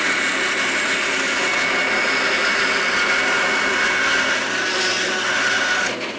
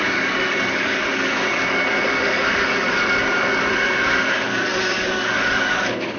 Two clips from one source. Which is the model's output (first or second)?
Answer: second